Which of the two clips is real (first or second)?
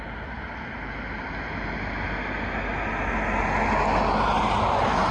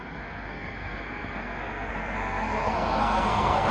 first